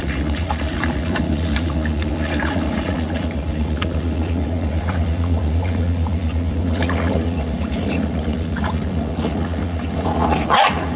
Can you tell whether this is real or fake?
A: fake